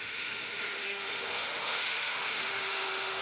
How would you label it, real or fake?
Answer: fake